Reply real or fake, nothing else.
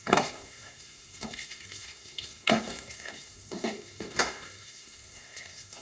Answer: fake